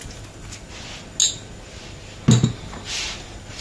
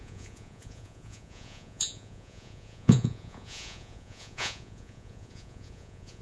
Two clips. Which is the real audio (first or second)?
first